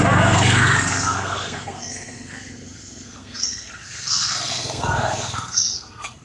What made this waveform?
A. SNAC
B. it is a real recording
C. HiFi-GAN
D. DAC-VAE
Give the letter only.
A